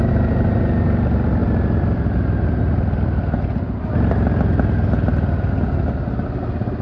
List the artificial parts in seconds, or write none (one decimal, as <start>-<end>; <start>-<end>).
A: none